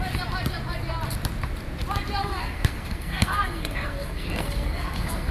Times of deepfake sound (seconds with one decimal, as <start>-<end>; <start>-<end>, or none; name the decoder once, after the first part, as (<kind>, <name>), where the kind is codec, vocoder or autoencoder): 2.2-5.3 (codec, SNAC)